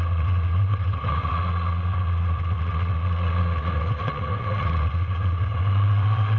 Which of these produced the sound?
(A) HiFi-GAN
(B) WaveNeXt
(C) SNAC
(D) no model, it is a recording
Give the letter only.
B